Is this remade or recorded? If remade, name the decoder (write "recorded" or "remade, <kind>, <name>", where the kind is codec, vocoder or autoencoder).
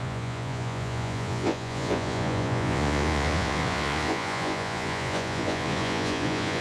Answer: remade, vocoder, Vocos